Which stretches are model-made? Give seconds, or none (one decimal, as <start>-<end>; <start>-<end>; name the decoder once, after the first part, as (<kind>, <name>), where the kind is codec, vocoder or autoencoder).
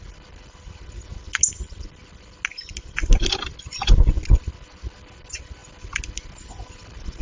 none